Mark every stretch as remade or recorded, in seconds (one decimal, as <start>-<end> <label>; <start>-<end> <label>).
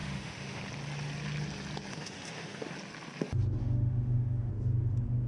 0.0-0.6 remade; 0.6-1.9 recorded; 1.9-2.7 remade; 2.7-3.6 recorded; 3.6-4.5 remade; 4.5-5.3 recorded